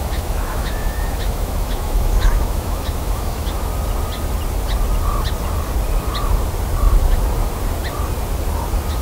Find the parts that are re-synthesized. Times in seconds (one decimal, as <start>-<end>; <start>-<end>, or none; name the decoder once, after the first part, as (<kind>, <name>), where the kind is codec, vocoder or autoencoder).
0.0-3.7 (autoencoder, DAC-VAE)